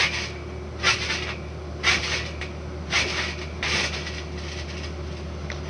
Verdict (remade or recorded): recorded